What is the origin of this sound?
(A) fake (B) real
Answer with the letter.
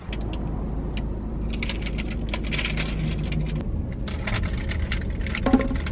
B